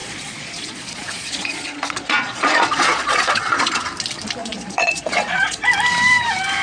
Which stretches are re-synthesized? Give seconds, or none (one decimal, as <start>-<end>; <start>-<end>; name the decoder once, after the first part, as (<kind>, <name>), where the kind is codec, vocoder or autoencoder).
0.0-3.8 (vocoder, Vocos); 4.4-5.7